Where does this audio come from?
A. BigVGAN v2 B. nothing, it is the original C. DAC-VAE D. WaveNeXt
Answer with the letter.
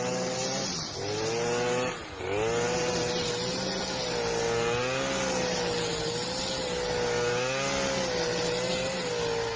B